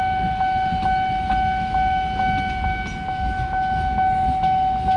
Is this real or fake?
real